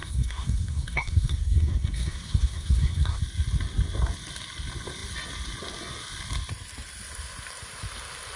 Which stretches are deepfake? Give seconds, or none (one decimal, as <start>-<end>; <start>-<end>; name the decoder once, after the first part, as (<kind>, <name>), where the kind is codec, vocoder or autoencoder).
0.0-3.2 (codec, SNAC)